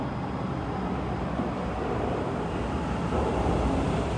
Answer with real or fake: real